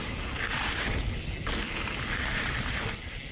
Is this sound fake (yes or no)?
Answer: no